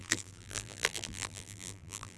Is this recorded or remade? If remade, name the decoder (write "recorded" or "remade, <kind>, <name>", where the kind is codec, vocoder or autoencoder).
remade, vocoder, BigVGAN v2